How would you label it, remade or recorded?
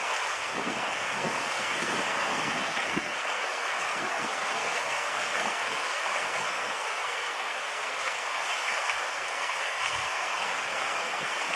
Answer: remade